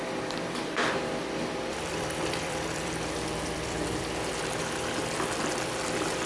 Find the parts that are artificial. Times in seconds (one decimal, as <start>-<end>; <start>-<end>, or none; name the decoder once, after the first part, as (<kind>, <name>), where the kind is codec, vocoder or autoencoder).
0.0-6.3 (vocoder, BigVGAN v2)